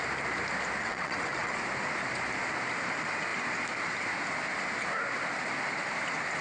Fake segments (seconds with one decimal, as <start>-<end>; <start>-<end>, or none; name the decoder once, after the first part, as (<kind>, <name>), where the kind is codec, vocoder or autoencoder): 0.8-1.6 (vocoder, WaveNeXt)